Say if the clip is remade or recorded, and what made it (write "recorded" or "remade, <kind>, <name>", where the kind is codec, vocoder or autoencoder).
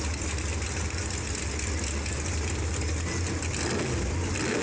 recorded